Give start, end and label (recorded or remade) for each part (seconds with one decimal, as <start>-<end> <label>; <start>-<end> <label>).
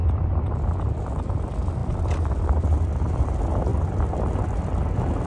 0.0-1.4 remade; 1.4-1.8 recorded; 1.8-3.3 remade; 3.3-3.7 recorded; 3.7-4.3 remade; 4.3-5.3 recorded